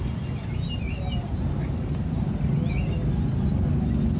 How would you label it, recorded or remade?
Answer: recorded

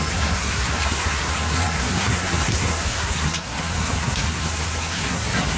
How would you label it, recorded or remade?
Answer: remade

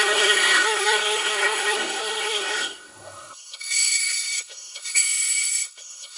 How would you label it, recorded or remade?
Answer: remade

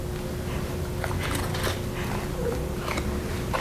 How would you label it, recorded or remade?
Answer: recorded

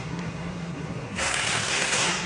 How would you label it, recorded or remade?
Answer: remade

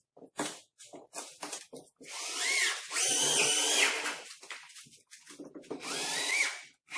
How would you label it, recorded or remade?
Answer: recorded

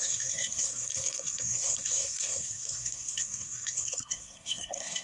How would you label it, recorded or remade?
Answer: remade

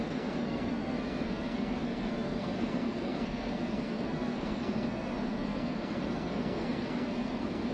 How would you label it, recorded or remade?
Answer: remade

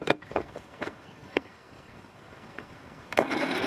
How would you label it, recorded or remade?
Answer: remade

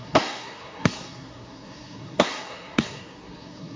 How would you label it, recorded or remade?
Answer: remade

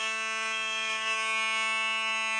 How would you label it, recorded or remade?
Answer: recorded